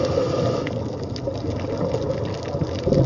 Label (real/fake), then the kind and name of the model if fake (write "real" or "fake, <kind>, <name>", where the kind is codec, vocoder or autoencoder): real